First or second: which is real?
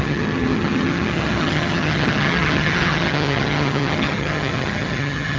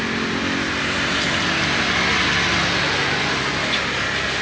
second